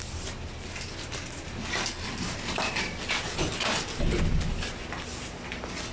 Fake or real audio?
real